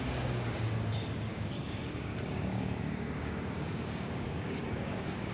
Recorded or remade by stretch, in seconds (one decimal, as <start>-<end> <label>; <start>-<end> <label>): 0.0-5.3 remade